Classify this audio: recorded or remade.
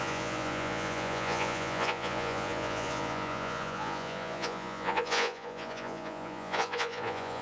remade